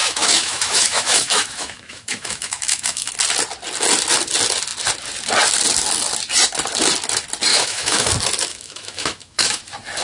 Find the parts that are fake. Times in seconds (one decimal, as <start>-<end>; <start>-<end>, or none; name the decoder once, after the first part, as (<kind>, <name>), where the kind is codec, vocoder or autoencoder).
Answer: 0.0-3.1 (autoencoder, DAC-VAE); 7.5-8.1; 8.5-9.6